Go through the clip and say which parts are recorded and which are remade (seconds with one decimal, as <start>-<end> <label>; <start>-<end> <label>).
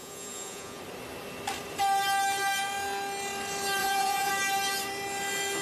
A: 0.0-0.8 remade; 0.8-3.8 recorded; 3.8-4.3 remade; 4.3-5.6 recorded